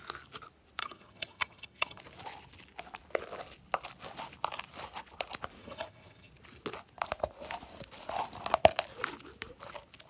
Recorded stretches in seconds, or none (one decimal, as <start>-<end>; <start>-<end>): 0.0-0.8; 2.0-5.6; 6.3-10.1